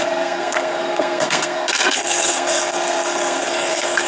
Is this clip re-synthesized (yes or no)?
yes